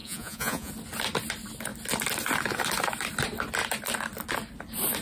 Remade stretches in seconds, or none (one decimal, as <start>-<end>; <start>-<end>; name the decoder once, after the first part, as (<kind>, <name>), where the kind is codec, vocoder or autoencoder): 0.0-0.7 (vocoder, Vocos)